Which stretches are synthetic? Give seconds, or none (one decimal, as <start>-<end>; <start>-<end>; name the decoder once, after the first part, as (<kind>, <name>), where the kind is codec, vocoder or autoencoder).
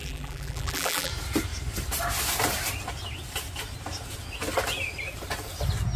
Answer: 0.0-1.1 (vocoder, BigVGAN v2)